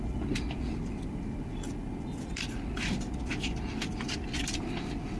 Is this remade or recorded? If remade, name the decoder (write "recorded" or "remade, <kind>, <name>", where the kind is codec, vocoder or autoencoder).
recorded